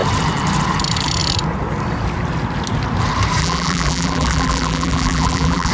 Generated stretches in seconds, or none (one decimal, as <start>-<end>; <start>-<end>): 3.4-5.7